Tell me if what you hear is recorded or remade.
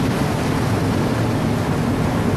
recorded